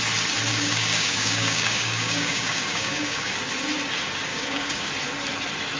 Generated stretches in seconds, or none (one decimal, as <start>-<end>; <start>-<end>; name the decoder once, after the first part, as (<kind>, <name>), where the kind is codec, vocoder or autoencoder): 0.5-3.3 (codec, DAC); 4.3-4.9